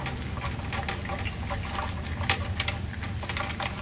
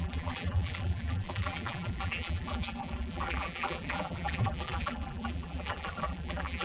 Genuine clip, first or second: first